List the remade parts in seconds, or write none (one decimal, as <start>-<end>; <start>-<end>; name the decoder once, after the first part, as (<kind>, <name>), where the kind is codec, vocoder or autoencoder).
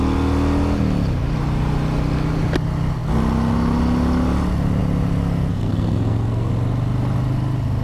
5.5-6.5 (codec, SNAC)